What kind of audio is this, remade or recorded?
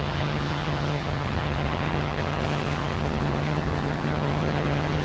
remade